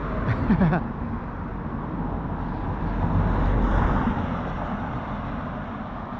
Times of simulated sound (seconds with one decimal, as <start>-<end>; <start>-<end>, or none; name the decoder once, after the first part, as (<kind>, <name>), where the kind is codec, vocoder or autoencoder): none